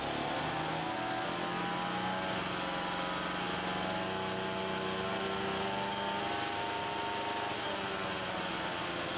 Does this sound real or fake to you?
real